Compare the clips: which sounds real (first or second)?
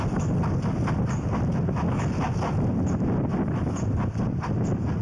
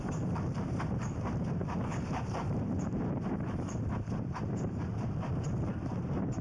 first